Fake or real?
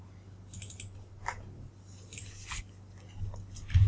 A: real